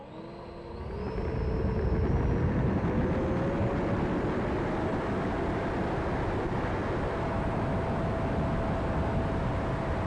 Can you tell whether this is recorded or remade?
recorded